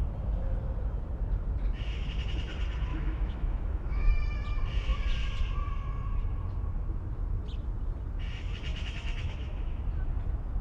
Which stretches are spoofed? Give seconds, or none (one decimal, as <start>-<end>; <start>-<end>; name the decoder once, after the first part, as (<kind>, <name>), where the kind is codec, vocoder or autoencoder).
2.9-4.1 (autoencoder, DAC-VAE); 8.7-9.8